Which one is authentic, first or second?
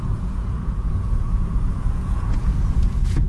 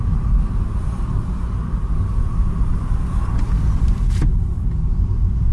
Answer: second